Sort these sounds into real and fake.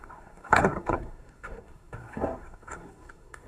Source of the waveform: fake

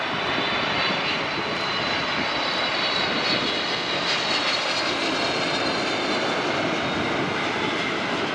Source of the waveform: real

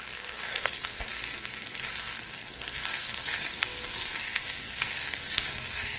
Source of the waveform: fake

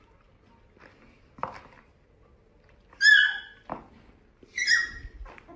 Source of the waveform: real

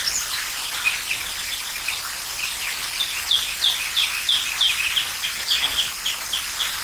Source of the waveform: real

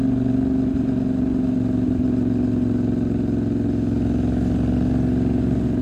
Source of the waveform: real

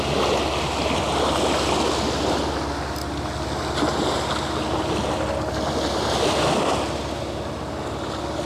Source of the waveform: real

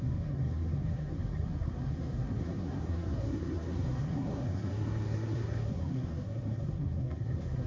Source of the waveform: fake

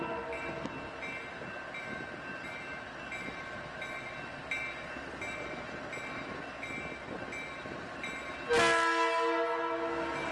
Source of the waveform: real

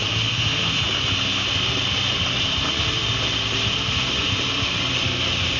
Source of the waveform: real